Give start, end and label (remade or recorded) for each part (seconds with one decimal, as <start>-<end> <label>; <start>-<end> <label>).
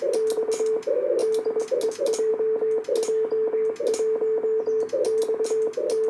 0.0-6.1 recorded